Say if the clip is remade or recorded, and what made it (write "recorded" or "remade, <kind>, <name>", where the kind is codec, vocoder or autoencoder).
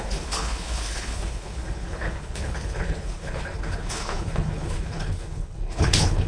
remade, codec, HILCodec